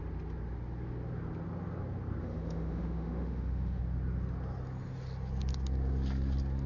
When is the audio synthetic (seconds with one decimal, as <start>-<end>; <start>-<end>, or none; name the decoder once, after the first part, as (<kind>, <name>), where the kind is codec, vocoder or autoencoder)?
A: 2.2-3.8 (autoencoder, DAC-VAE)